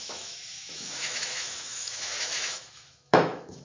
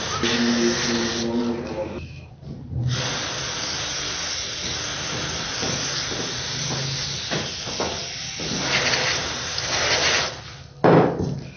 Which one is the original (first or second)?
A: second